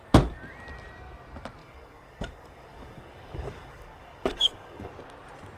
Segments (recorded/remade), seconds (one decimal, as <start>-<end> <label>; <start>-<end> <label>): 0.0-1.6 recorded; 1.6-4.9 remade; 4.9-5.6 recorded